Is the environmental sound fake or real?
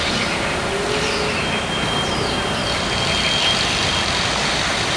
real